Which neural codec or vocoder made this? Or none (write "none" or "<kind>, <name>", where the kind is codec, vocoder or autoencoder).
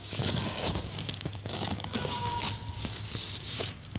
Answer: codec, DAC